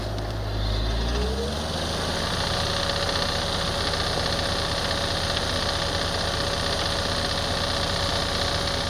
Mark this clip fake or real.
real